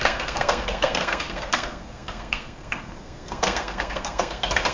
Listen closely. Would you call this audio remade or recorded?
remade